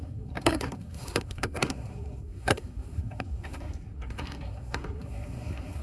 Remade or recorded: remade